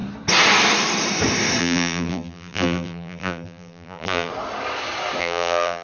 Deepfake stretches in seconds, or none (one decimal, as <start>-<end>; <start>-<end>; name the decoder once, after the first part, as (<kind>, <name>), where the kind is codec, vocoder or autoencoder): 1.6-4.3 (vocoder, BigVGAN v2); 5.2-5.8

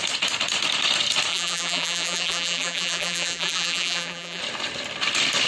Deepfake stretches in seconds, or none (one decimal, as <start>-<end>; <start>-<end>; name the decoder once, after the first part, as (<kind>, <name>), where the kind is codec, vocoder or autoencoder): 1.3-4.4 (vocoder, BigVGAN v2)

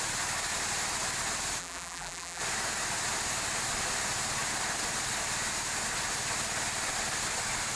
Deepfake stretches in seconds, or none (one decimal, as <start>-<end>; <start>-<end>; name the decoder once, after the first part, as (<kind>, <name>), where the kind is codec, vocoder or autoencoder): 1.6-2.4 (vocoder, BigVGAN v2)